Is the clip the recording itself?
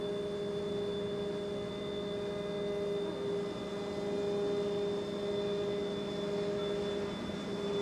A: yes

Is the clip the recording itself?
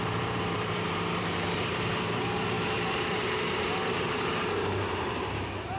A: no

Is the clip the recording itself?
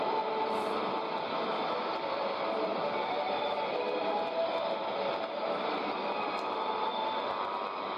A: no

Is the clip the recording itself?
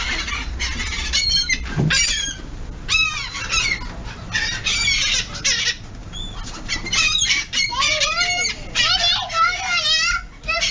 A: yes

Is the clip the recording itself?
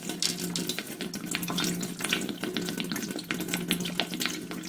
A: yes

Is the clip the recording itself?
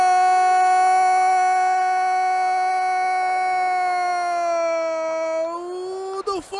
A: yes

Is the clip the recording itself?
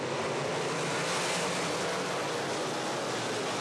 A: yes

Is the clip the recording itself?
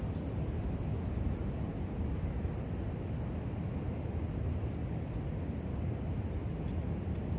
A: yes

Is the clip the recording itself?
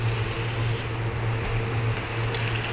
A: yes